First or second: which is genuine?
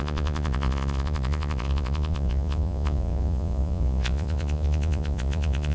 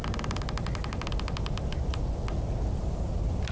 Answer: second